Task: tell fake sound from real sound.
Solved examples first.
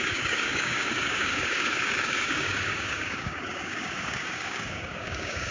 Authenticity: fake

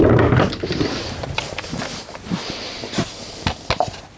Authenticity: real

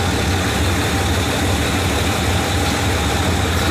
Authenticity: real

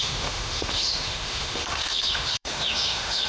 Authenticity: fake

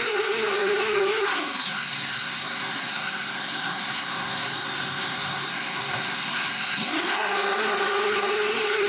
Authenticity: fake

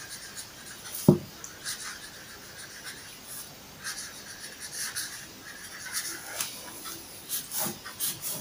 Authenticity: real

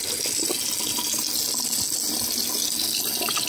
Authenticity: real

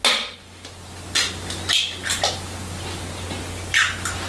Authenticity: real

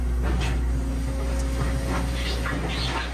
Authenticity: real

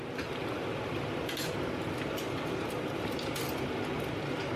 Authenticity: real